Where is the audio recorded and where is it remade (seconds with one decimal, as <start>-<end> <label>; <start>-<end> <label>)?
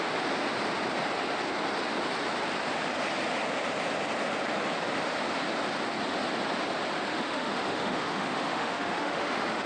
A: 0.0-7.1 recorded; 7.1-9.7 remade